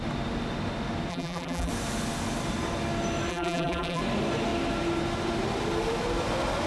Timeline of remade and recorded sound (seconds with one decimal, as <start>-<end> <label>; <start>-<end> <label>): 0.0-1.1 recorded; 1.1-1.7 remade; 1.7-3.3 recorded; 3.3-4.0 remade; 4.0-6.7 recorded